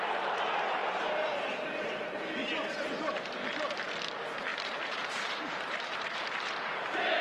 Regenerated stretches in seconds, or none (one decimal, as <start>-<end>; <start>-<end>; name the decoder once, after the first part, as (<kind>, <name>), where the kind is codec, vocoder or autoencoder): 0.8-3.0 (vocoder, BigVGAN v2); 4.5-6.2